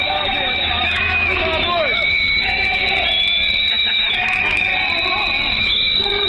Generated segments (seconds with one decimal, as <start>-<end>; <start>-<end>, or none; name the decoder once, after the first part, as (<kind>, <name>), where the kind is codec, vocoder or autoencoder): 0.0-2.8 (autoencoder, DAC-VAE); 3.7-4.7; 5.6-6.3

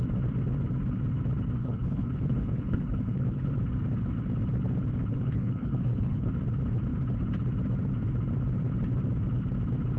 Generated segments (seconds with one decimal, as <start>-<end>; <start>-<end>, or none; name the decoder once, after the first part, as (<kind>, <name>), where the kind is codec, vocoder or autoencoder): 1.6-3.5 (codec, HILCodec); 5.1-6.3